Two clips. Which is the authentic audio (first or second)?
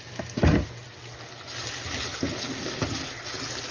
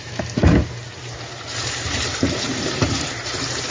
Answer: first